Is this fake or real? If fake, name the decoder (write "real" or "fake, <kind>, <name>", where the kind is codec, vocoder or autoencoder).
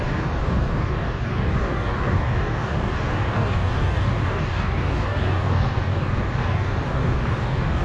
fake, codec, DAC